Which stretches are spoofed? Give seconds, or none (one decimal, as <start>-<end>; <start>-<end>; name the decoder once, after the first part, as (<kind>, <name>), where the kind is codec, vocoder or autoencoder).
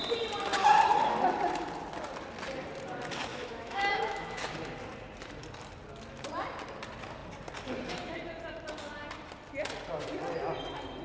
3.3-4.4 (autoencoder, DAC-VAE)